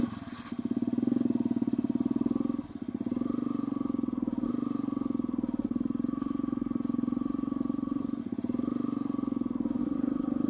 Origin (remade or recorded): recorded